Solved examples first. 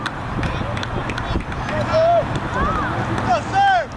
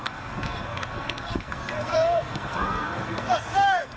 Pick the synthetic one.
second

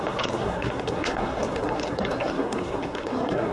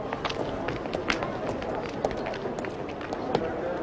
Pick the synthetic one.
first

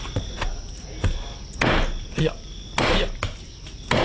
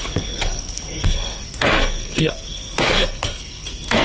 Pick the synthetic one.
second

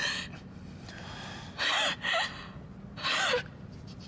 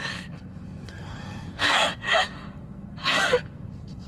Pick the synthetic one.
second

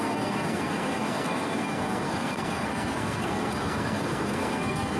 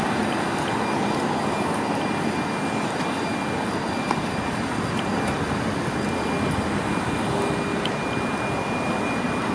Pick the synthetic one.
first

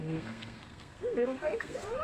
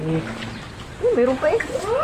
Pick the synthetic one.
first